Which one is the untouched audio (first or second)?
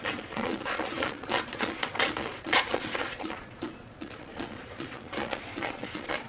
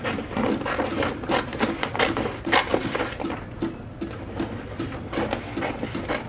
second